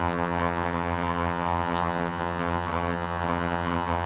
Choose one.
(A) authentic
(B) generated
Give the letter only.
B